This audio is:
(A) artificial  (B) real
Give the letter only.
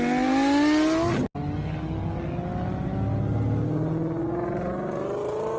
B